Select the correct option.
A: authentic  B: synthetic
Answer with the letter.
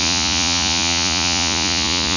B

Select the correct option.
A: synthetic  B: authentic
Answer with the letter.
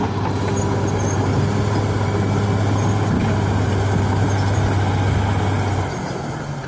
B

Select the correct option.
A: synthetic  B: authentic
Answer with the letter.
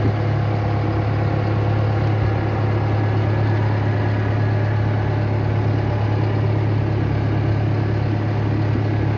B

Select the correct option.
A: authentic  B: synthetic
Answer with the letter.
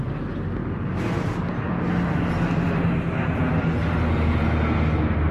A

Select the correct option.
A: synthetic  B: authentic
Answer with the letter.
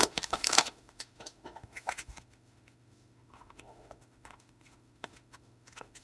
A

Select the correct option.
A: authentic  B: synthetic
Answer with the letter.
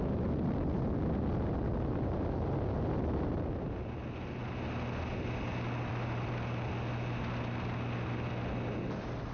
A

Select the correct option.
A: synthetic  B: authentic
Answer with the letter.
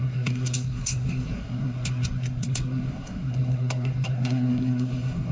A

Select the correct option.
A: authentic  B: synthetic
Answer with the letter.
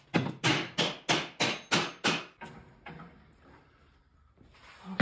A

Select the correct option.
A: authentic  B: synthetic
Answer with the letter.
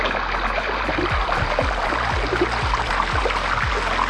A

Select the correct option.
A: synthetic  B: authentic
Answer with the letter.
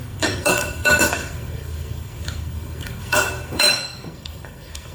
A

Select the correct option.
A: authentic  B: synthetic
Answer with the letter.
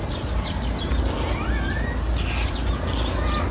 A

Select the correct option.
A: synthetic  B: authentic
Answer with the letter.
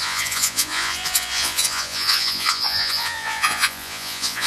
A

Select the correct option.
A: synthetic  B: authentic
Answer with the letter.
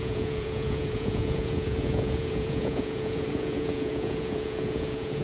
A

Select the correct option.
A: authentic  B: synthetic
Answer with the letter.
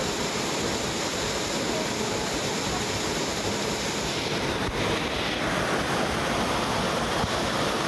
A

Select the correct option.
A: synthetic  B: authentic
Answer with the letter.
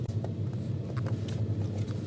B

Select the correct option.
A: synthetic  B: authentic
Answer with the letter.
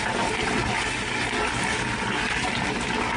B